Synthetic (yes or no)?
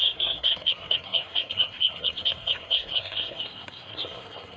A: yes